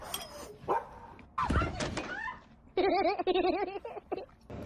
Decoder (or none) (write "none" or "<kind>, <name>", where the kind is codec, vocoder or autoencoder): none